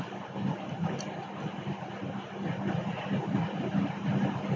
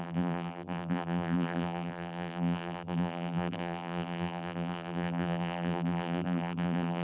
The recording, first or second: first